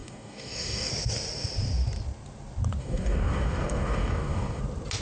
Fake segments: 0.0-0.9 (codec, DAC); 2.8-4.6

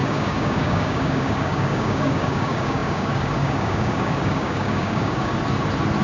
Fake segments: 0.0-5.3 (codec, DAC)

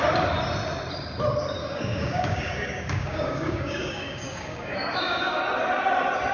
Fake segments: 1.6-5.4 (codec, DAC)

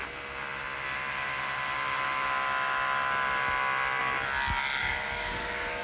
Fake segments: 4.8-5.8 (codec, DAC)

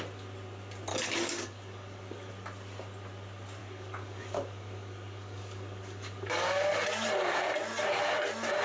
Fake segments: 0.9-2.3 (codec, DAC); 3.6-6.7

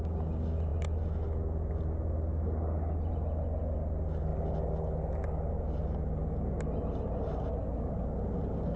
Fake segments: none

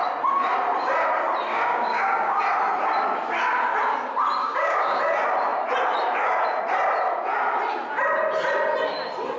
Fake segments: 1.5-2.4 (codec, DAC); 4.4-5.0

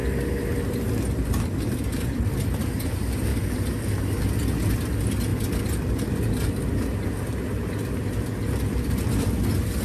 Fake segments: none